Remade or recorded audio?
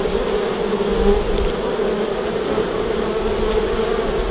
recorded